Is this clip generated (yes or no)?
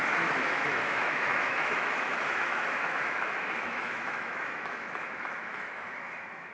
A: yes